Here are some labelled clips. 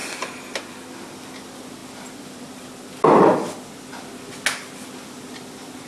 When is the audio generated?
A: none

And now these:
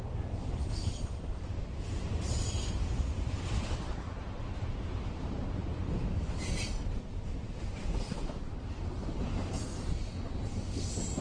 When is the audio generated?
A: 0.0-5.8 (vocoder, BigVGAN v2); 6.8-11.2

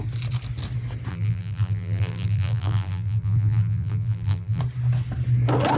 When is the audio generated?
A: 1.1-4.6 (vocoder, BigVGAN v2)

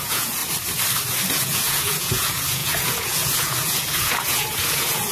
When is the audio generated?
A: 0.0-0.4 (vocoder, Vocos); 1.3-5.1

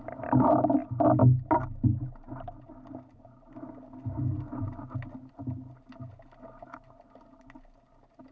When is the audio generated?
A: none